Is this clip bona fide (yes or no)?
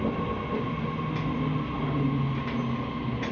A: yes